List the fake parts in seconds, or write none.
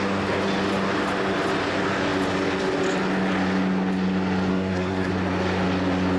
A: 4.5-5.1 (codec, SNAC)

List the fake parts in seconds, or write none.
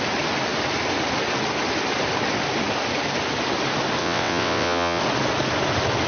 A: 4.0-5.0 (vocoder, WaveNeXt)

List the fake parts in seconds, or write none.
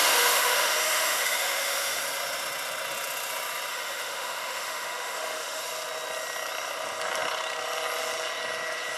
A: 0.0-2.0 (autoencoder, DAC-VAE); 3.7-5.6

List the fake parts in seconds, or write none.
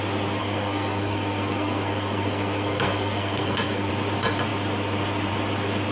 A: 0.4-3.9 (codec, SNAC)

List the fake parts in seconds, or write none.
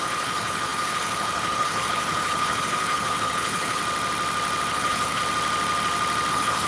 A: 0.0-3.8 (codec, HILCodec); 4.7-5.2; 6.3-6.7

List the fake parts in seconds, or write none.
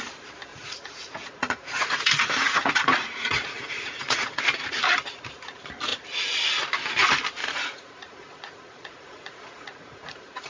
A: 0.5-4.4 (vocoder, Vocos); 7.4-10.5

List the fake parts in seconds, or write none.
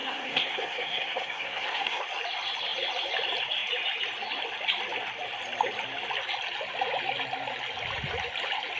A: 0.0-2.0 (codec, SNAC)